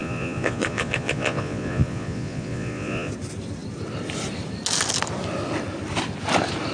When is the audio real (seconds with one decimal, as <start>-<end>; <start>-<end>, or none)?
3.1-6.7